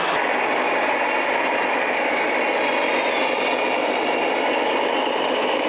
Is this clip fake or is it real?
real